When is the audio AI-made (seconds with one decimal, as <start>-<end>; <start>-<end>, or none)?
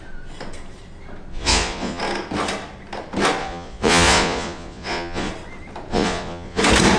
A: 1.3-2.0; 3.4-5.3; 5.9-6.6